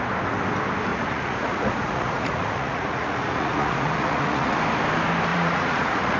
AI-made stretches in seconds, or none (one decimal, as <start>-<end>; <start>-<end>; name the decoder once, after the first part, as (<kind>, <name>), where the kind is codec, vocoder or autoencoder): 0.9-4.6 (vocoder, Vocos); 5.3-6.2